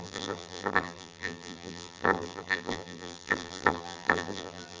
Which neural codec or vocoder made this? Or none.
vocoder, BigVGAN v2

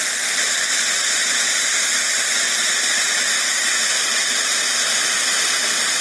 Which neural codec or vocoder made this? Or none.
none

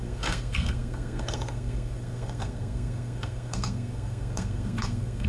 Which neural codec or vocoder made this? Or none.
codec, SNAC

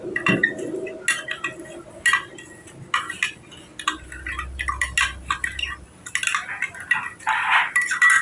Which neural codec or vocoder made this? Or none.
none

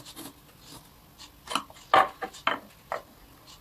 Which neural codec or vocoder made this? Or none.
none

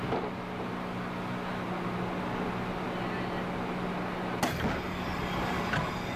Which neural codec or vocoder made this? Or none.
none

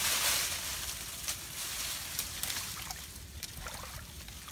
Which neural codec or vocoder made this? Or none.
none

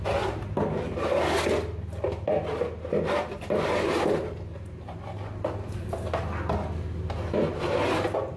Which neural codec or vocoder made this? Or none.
none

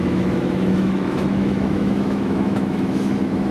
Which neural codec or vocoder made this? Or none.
autoencoder, DAC-VAE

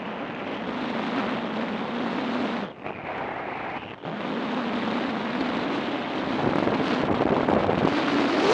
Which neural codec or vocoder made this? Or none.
none